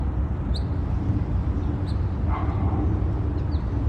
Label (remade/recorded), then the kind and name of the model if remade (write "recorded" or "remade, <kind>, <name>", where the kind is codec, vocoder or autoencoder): recorded